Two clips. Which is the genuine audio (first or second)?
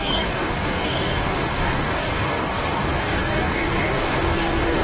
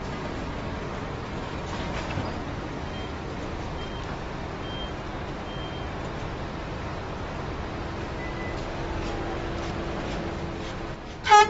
second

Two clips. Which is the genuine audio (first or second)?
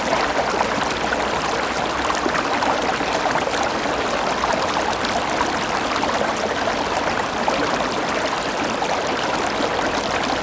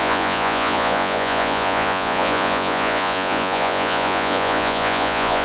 first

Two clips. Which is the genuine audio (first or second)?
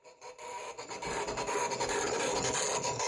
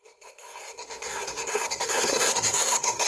first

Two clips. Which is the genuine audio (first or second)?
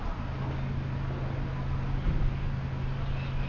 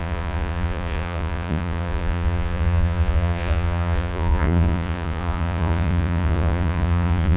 first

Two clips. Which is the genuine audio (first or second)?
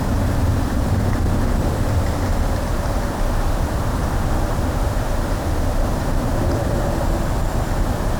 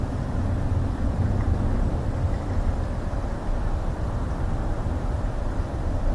first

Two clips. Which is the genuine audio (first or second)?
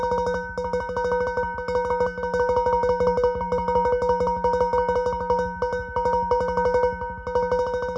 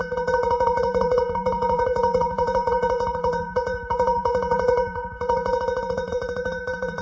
first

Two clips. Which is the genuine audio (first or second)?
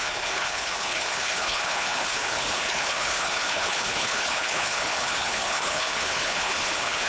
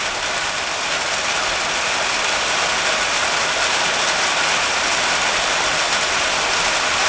second